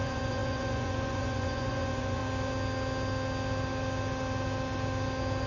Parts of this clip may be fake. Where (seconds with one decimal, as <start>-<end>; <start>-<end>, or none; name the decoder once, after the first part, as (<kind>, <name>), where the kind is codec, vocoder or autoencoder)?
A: 0.0-2.2 (vocoder, Vocos)